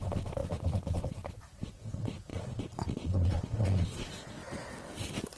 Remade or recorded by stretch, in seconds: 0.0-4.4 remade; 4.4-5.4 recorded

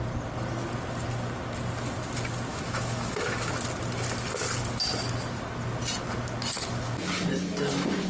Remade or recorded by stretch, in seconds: 0.0-2.5 recorded; 2.5-3.5 remade; 3.5-8.1 recorded

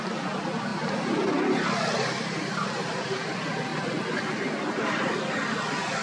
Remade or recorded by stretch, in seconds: 0.0-6.0 recorded